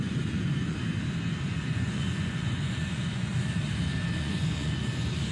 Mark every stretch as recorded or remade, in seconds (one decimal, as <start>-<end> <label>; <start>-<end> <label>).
0.0-0.9 remade; 0.9-1.5 recorded; 1.5-3.3 remade; 3.3-4.2 recorded; 4.2-5.3 remade